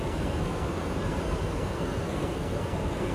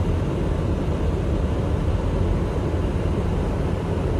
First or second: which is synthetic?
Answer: first